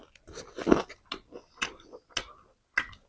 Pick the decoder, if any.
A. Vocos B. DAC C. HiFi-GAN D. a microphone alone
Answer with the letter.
D